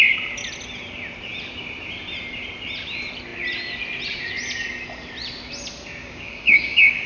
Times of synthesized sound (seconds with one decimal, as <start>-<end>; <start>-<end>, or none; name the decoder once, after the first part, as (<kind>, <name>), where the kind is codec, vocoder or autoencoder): 6.0-7.1 (codec, DAC)